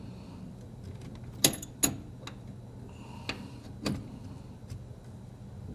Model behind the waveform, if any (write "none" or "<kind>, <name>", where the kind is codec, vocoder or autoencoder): none